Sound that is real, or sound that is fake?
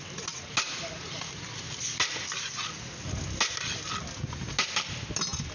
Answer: real